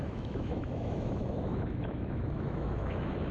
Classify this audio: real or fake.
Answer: fake